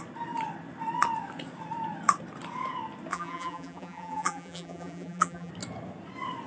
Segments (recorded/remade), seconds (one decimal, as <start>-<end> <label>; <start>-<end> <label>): 0.0-3.1 recorded; 3.1-5.5 remade; 5.5-6.5 recorded